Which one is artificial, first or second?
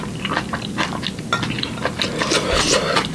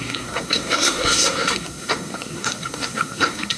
second